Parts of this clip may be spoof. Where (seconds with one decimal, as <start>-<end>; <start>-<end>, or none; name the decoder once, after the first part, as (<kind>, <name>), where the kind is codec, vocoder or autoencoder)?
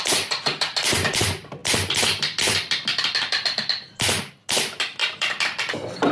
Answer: none